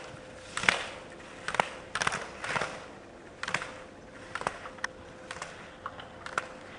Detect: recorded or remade recorded